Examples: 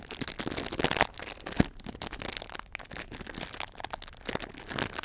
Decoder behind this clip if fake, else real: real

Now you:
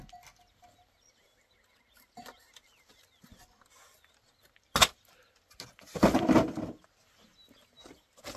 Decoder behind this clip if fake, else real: real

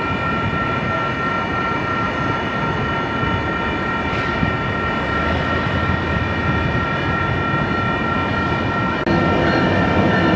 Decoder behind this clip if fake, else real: real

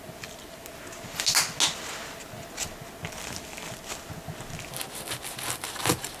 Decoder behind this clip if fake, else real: real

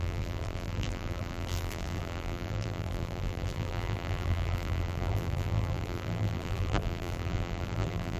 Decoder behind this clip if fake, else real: fake, vocoder, BigVGAN v2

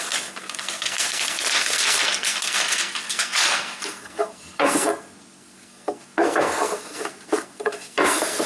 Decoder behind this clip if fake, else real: fake, codec, SNAC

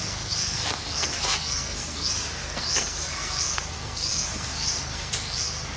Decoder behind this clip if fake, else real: fake, codec, SNAC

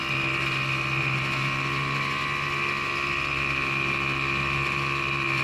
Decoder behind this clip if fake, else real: real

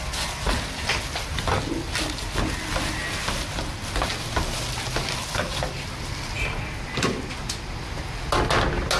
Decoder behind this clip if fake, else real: real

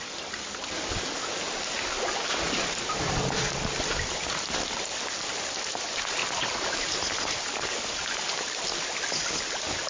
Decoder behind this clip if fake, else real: real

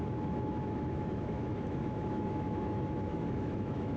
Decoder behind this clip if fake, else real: fake, autoencoder, DAC-VAE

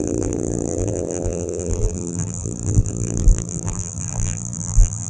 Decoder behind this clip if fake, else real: fake, vocoder, BigVGAN v2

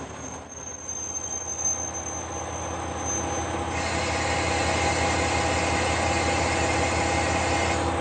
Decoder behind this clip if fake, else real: real